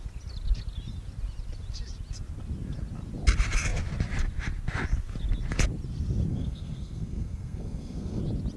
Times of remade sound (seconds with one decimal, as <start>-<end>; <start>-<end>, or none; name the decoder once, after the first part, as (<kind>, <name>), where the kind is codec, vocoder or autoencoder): 6.3-8.2 (codec, SNAC)